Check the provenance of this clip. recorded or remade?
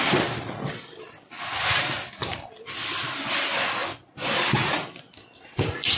recorded